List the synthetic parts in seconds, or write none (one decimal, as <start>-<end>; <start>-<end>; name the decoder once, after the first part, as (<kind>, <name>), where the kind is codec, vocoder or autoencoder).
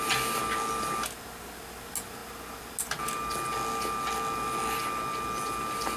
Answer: none